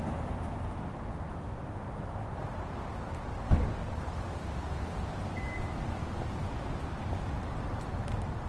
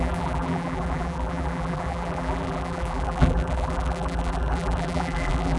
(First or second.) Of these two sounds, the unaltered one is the first